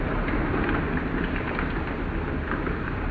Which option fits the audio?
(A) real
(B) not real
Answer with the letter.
A